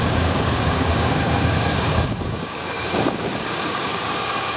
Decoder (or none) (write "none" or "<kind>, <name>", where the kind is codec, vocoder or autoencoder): codec, DAC